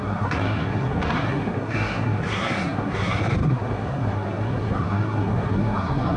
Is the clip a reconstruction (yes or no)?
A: yes